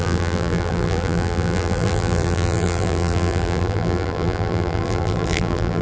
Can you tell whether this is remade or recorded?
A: remade